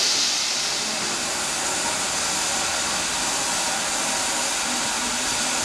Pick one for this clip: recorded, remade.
recorded